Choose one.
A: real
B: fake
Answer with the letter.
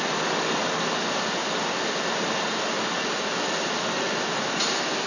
A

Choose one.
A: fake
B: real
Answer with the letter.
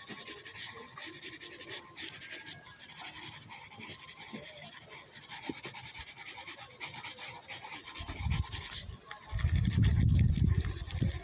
B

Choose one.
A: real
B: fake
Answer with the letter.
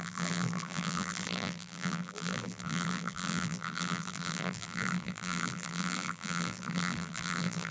B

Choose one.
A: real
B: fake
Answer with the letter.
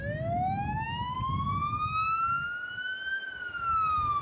A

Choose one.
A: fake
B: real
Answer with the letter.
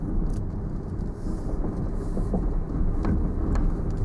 B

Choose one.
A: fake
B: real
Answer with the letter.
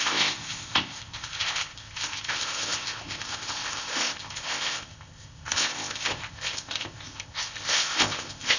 A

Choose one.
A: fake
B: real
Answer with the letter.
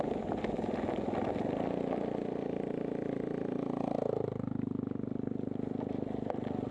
B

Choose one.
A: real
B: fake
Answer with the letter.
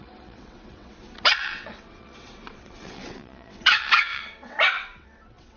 B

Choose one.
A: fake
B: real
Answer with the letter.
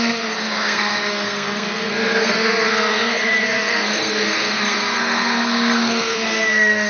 A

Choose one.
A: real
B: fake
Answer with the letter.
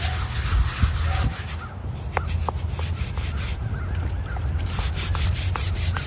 A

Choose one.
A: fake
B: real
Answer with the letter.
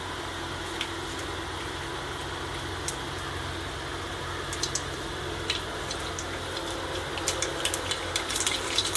B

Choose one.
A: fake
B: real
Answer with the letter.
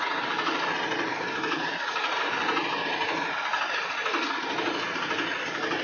B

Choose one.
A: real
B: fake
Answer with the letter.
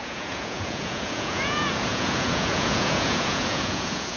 B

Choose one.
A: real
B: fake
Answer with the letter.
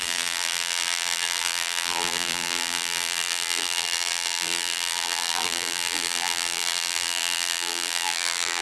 B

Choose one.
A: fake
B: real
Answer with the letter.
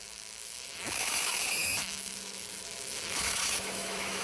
A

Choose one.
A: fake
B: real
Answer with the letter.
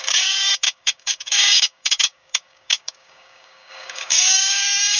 A